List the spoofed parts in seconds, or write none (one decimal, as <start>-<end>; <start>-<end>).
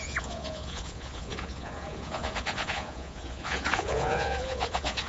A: 0.0-5.1